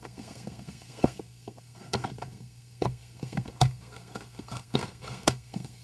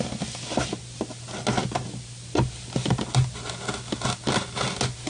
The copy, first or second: first